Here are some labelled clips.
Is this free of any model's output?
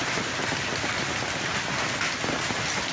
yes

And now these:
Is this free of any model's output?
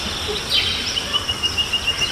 yes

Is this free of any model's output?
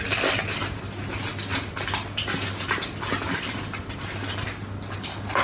yes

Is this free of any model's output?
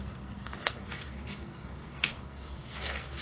no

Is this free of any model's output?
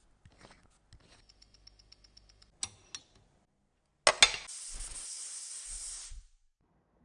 yes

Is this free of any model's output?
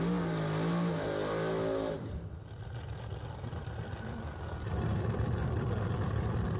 yes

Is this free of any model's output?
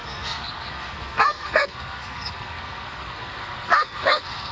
no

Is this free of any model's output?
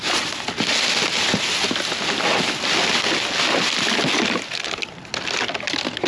yes